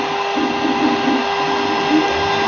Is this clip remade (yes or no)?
no